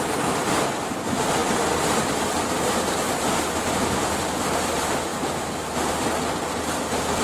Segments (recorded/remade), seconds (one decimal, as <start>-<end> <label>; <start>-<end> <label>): 0.0-7.2 recorded